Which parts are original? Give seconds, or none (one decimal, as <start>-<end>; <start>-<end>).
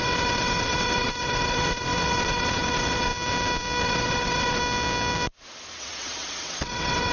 3.1-3.8; 4.6-5.8